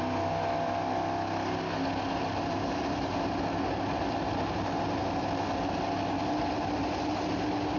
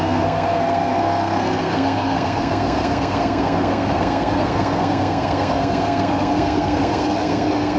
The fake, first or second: second